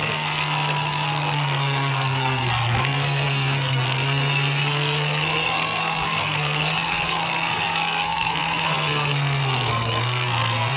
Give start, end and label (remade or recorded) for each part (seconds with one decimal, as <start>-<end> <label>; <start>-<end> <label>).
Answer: 0.0-10.8 remade